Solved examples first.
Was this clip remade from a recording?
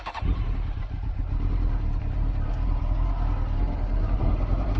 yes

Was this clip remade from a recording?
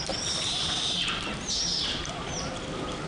no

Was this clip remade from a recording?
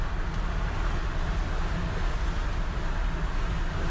no